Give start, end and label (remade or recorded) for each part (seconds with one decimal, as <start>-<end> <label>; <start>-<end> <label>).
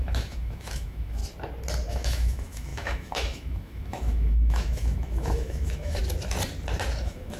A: 0.0-1.2 remade; 1.2-1.9 recorded; 1.9-6.0 remade; 6.0-7.0 recorded; 7.0-7.4 remade